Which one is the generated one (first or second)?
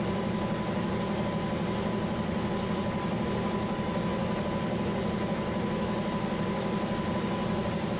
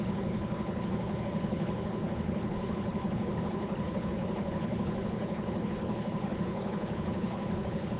second